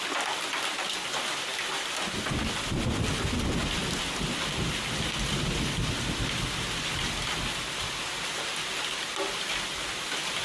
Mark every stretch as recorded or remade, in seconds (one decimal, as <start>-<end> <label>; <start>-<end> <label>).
0.0-10.4 recorded